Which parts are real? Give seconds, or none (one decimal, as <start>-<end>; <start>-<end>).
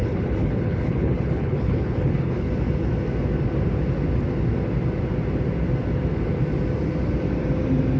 2.5-8.0